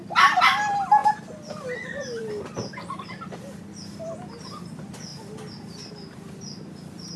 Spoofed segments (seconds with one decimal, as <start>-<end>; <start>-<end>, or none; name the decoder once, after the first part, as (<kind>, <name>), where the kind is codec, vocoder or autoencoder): none